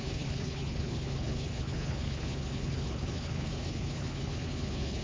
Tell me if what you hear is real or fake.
fake